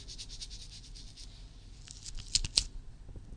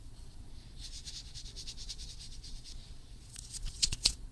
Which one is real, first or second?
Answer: first